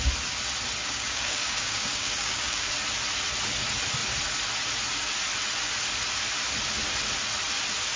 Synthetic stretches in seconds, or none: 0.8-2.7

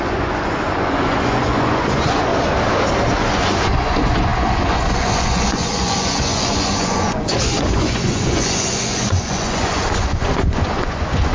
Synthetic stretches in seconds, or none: 0.0-2.3; 3.2-11.3

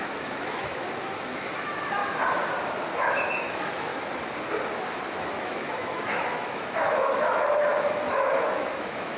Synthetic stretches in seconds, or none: 0.0-2.0; 3.3-3.9; 5.1-9.2

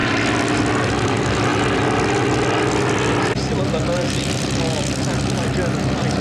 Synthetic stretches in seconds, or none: none